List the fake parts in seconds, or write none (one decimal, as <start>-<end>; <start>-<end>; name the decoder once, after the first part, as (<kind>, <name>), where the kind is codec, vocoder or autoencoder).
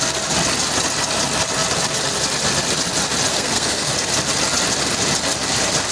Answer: 3.3-3.9 (codec, SNAC)